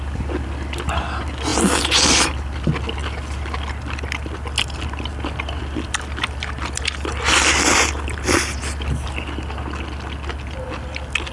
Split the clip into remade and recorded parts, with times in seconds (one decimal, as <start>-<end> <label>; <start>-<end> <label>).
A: 0.0-11.3 recorded